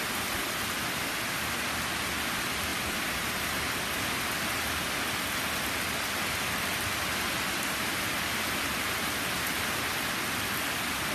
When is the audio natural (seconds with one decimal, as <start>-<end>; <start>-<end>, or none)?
0.0-11.1